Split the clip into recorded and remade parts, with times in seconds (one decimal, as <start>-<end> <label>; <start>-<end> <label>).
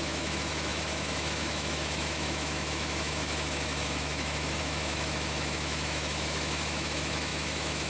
0.0-7.9 remade